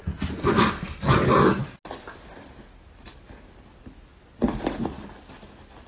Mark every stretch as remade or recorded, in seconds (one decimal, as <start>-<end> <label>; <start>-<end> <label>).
0.0-0.4 recorded; 0.4-1.0 remade; 1.0-5.9 recorded

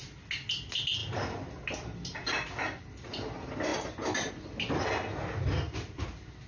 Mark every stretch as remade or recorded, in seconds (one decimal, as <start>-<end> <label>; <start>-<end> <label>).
0.0-6.5 recorded

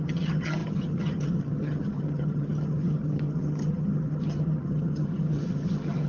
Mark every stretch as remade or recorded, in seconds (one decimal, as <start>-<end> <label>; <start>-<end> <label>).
0.0-6.1 remade